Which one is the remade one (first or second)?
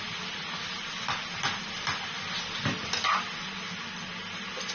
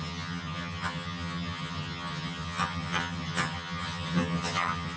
second